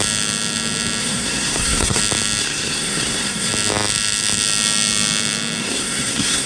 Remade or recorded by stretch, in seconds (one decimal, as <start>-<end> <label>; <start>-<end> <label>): 0.0-1.0 recorded; 1.0-2.0 remade; 2.0-2.4 recorded; 2.4-3.5 remade; 3.5-5.6 recorded; 5.6-6.5 remade